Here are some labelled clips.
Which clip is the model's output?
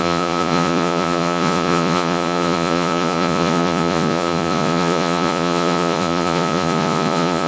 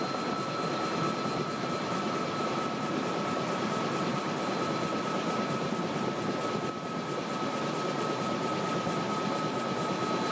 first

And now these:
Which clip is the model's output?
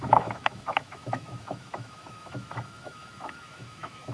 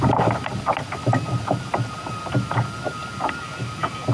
first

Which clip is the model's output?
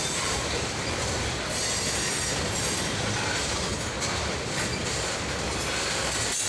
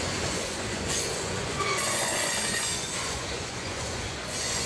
second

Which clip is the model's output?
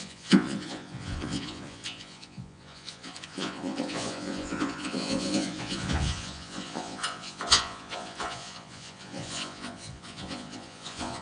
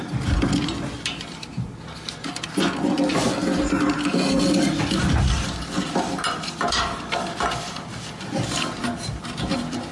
first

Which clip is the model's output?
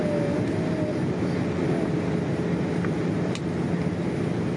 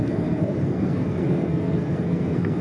second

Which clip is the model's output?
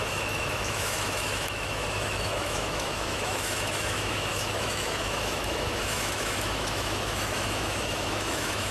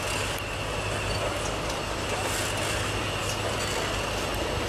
first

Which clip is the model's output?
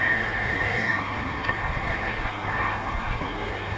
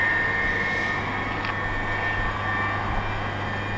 first